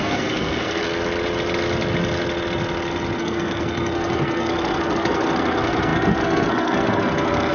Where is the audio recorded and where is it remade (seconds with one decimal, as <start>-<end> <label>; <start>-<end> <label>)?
0.0-0.8 remade; 0.8-3.2 recorded; 3.2-7.5 remade